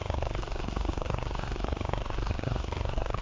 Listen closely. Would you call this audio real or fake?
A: fake